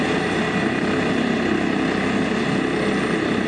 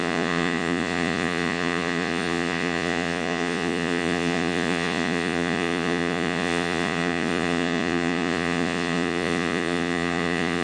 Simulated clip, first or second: second